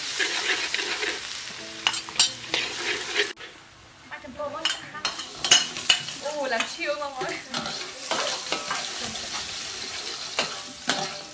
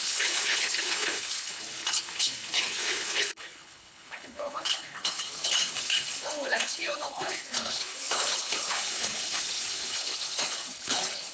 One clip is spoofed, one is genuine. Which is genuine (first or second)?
first